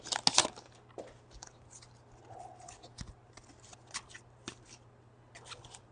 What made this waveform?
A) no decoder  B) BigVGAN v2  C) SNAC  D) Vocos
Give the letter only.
A